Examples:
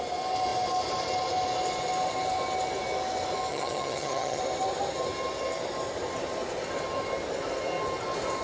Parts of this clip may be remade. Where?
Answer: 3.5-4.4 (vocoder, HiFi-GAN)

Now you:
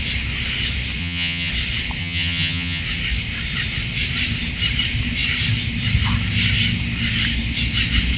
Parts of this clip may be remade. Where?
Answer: 1.0-1.5 (vocoder, HiFi-GAN); 2.0-2.8